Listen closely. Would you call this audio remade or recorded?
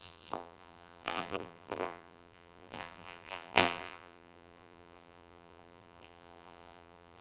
remade